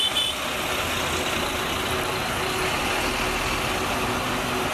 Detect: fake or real real